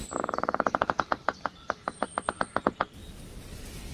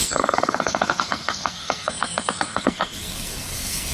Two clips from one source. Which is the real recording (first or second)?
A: first